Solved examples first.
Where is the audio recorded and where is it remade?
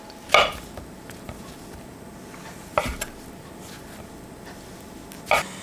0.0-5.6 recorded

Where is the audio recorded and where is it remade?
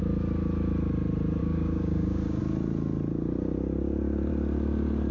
0.0-1.4 recorded; 1.4-2.4 remade; 2.4-5.1 recorded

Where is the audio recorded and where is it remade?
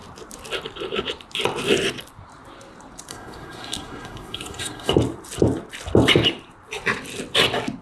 0.0-3.1 recorded; 3.1-4.9 remade; 4.9-7.8 recorded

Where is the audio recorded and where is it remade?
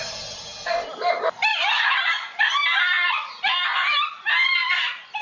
0.0-1.5 recorded; 1.5-2.4 remade; 2.4-5.2 recorded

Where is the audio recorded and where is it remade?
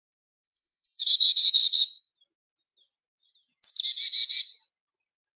0.0-2.1 remade; 2.1-5.4 recorded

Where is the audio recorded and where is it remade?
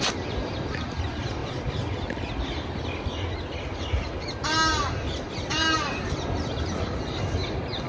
0.0-7.9 recorded